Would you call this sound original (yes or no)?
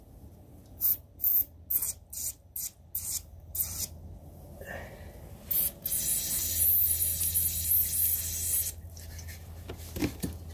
yes